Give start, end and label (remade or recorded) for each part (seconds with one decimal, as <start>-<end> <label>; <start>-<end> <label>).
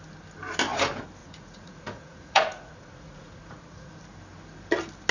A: 0.0-1.2 recorded; 1.2-3.9 remade; 3.9-5.1 recorded